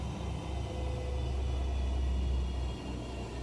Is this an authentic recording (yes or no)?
yes